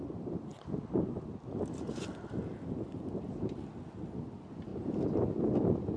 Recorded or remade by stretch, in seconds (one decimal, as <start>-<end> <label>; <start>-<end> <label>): 0.0-6.0 recorded

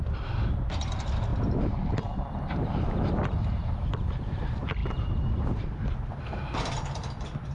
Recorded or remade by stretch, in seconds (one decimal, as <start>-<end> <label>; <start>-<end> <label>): 0.0-7.5 recorded

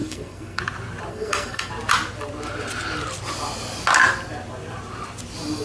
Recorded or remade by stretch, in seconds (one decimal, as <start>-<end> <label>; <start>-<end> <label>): 0.0-0.6 remade; 0.6-1.1 recorded; 1.1-1.7 remade; 1.7-5.6 recorded

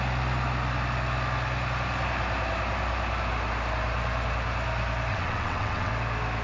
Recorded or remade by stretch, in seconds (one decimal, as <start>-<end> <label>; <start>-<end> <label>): 0.0-5.1 recorded; 5.1-5.9 remade; 5.9-6.4 recorded

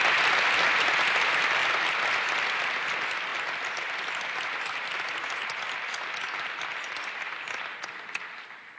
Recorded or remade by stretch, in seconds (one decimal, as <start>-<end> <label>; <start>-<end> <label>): 0.0-8.8 recorded

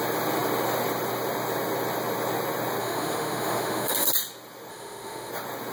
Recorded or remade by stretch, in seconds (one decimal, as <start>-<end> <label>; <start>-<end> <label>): 0.0-2.8 recorded; 2.8-4.1 remade; 4.1-4.7 recorded; 4.7-5.3 remade; 5.3-5.7 recorded

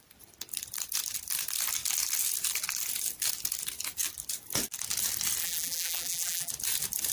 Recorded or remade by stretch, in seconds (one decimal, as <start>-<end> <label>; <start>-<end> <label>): 0.0-5.4 recorded; 5.4-6.5 remade; 6.5-7.1 recorded